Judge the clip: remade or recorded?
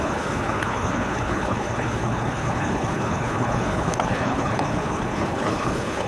remade